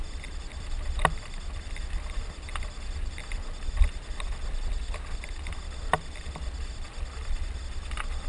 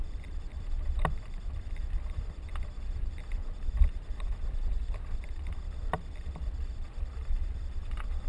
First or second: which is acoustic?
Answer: first